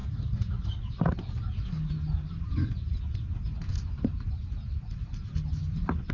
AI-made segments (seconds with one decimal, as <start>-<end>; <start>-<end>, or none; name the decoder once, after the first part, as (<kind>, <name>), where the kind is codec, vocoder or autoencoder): none